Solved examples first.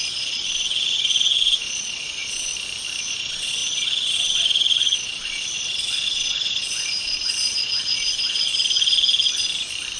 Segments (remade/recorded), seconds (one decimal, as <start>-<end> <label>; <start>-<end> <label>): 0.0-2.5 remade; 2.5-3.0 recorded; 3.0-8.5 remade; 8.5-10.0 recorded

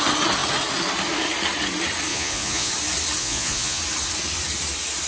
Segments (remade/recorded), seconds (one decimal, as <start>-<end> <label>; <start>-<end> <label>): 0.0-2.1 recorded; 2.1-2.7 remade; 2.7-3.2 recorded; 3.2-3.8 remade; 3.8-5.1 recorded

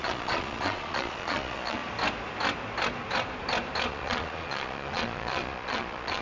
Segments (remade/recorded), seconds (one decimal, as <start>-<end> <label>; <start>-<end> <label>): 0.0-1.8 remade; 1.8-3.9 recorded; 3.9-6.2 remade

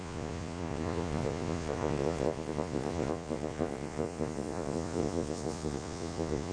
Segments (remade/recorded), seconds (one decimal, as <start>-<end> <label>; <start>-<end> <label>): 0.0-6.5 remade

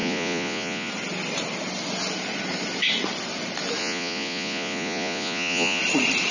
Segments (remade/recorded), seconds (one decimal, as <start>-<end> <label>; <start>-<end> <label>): 0.0-0.9 remade; 0.9-3.8 recorded; 3.8-5.8 remade; 5.8-6.3 recorded

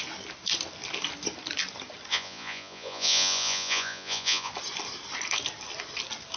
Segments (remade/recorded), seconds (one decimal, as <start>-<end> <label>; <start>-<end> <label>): 0.0-2.1 recorded; 2.1-4.5 remade; 4.5-6.4 recorded